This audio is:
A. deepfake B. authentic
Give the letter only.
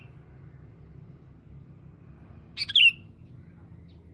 B